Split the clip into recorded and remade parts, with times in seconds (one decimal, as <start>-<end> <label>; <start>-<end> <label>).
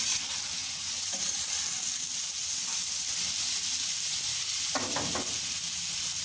0.0-0.6 recorded; 0.6-1.2 remade; 1.2-6.2 recorded